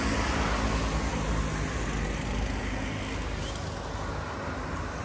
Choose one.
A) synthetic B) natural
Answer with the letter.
B